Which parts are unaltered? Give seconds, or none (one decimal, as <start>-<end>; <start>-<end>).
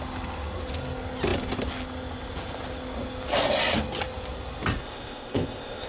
0.0-4.8